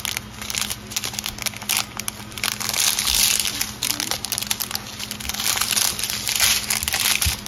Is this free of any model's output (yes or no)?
yes